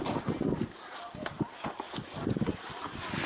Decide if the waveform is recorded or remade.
recorded